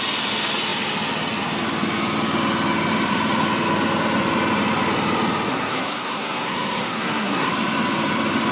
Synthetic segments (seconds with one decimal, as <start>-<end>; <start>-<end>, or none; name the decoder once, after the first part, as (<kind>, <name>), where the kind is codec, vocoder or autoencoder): 5.5-7.5 (codec, SNAC)